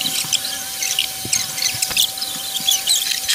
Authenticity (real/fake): fake